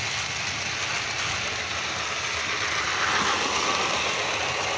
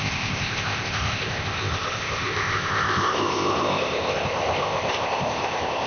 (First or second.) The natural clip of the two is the first